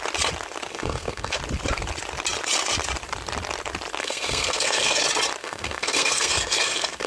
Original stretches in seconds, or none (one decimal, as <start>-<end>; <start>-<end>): 0.0-0.7; 1.4-4.0; 5.0-5.4